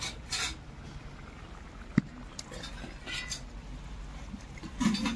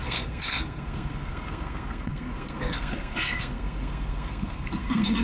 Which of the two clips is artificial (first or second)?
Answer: second